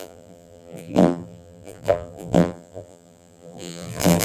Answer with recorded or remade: remade